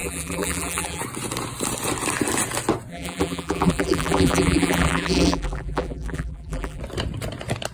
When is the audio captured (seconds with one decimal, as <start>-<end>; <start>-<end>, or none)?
1.0-2.9; 6.8-7.7